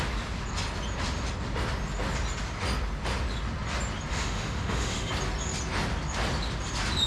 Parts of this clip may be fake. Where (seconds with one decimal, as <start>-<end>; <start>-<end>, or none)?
4.1-5.1